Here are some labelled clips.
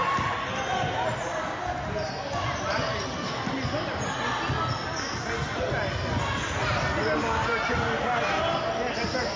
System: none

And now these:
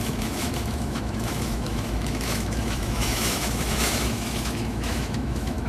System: autoencoder, DAC-VAE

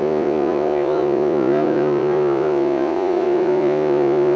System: vocoder, Vocos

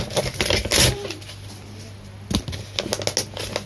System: none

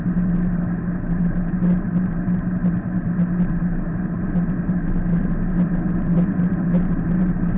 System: none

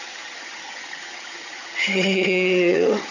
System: vocoder, HiFi-GAN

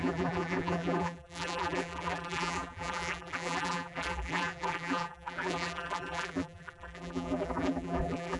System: vocoder, BigVGAN v2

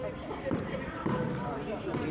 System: none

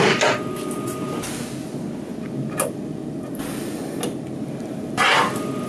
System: none